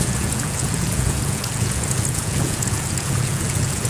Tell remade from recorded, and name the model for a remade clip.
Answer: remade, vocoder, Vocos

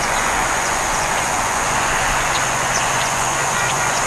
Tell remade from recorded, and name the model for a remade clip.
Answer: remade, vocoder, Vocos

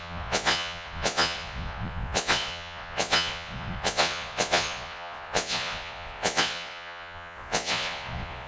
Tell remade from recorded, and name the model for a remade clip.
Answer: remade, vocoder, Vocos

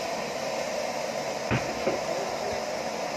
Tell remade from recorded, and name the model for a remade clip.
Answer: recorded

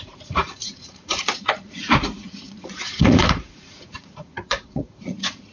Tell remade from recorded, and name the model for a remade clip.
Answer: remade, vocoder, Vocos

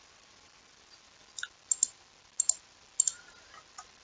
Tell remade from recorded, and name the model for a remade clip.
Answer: recorded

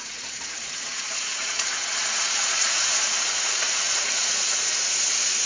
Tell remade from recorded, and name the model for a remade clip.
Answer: remade, vocoder, Vocos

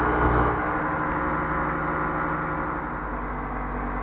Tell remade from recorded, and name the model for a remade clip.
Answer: recorded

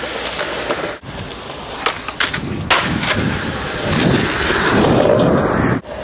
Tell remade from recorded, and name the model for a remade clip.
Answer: recorded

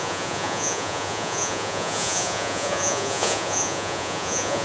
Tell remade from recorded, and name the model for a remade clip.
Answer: remade, vocoder, Vocos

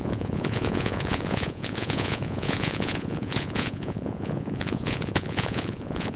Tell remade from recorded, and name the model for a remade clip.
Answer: remade, vocoder, Vocos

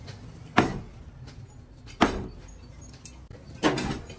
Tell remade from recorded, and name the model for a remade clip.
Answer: recorded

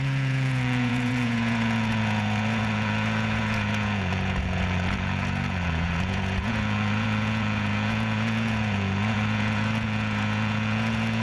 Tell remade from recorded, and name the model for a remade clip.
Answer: remade, vocoder, Vocos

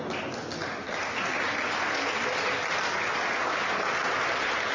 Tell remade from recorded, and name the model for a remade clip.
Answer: recorded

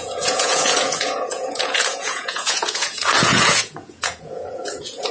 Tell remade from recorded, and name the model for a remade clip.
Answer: remade, vocoder, Vocos